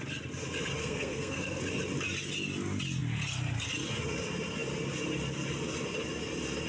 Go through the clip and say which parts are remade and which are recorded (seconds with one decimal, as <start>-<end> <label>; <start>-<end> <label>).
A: 0.0-0.8 recorded; 0.8-1.6 remade; 1.6-6.7 recorded